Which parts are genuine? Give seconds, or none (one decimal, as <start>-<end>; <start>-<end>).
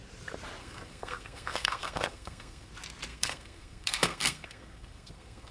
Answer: 0.0-0.6; 2.7-3.1